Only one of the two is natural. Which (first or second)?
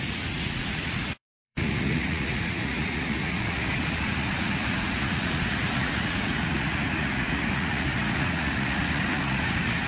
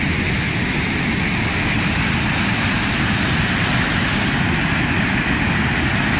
second